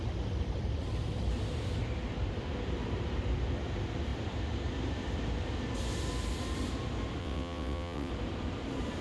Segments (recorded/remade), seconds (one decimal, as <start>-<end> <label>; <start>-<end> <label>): 0.0-7.2 recorded; 7.2-8.1 remade; 8.1-9.0 recorded